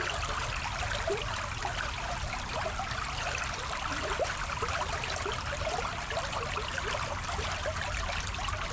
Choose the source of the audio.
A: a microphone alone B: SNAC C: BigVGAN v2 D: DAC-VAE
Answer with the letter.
A